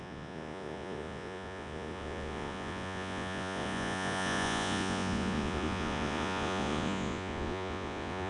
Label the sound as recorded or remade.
remade